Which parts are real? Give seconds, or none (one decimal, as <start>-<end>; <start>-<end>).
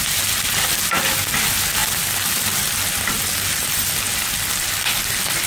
0.0-5.5